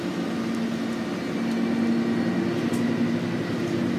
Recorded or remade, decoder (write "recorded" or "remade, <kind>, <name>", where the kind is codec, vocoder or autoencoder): recorded